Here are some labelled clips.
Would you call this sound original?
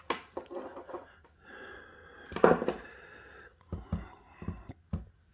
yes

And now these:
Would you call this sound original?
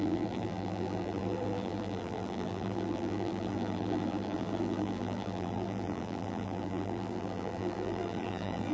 no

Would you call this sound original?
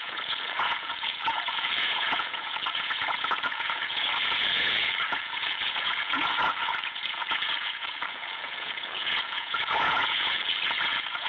no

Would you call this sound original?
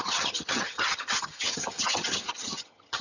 no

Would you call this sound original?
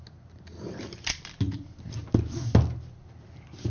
yes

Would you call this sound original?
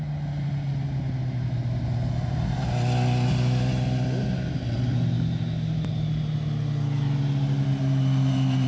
yes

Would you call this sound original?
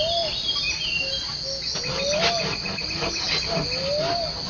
yes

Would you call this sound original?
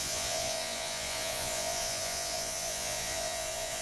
no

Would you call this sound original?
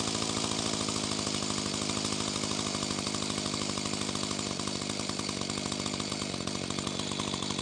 yes